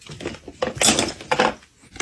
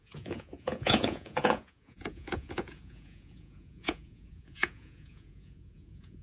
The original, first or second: first